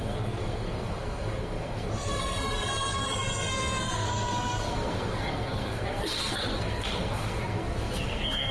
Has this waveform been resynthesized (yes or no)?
yes